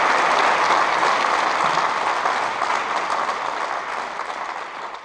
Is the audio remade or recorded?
recorded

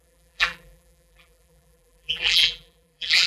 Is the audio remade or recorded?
remade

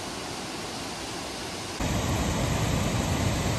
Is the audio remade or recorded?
recorded